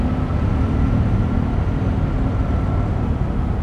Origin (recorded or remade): recorded